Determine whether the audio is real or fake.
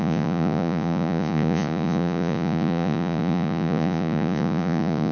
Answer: fake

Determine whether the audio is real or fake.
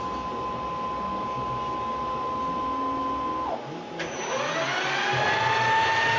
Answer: real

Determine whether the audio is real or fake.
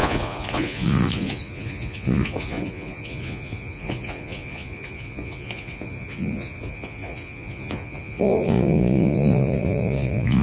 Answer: fake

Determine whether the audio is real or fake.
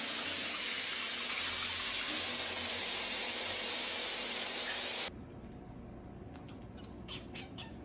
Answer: real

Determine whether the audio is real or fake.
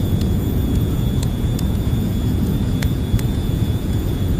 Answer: fake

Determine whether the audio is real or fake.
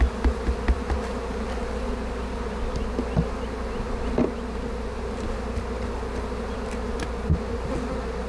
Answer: real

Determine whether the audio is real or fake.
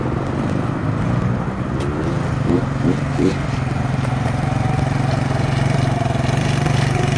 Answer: real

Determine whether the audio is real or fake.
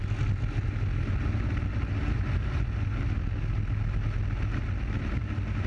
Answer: real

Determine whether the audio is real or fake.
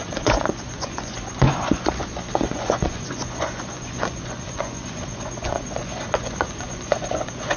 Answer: fake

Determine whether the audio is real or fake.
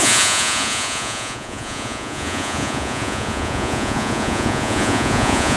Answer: fake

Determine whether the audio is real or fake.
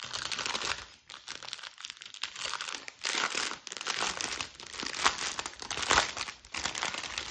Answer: real